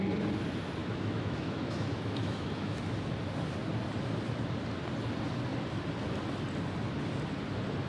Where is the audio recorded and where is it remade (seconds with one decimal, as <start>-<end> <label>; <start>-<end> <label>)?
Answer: 0.0-0.8 recorded; 0.8-2.8 remade; 2.8-7.9 recorded